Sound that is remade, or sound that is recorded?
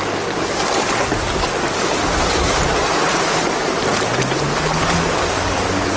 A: recorded